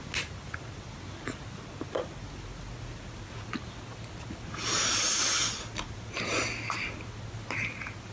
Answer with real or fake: real